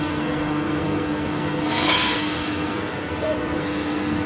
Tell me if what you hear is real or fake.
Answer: fake